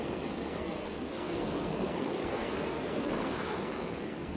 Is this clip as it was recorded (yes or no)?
no